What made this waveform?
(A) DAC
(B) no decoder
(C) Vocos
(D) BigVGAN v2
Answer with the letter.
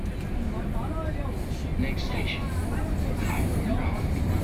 B